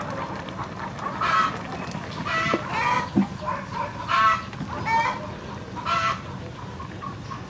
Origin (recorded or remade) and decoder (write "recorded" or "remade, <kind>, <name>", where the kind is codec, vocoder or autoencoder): recorded